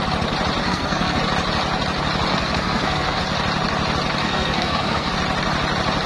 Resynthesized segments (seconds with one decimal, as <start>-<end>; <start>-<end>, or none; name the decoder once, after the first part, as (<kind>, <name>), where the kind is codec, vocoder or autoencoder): 0.6-1.2 (codec, SNAC); 2.3-3.2; 4.2-5.1